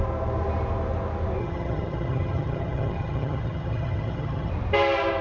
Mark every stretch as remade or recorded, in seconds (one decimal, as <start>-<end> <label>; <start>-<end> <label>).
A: 0.0-1.4 recorded; 1.4-4.5 remade; 4.5-5.2 recorded